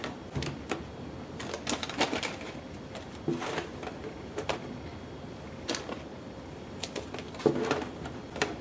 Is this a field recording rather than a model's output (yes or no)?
yes